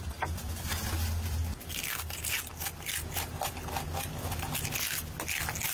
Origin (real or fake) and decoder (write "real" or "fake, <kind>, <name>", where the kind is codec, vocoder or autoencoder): real